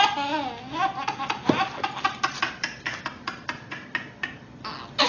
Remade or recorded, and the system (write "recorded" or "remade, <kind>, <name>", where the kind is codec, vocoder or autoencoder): recorded